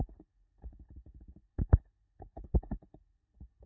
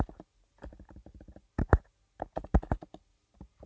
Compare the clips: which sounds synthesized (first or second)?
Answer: first